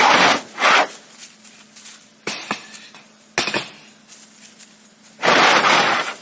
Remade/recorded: recorded